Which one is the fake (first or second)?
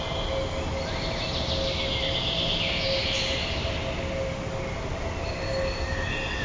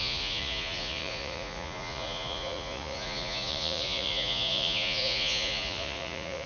second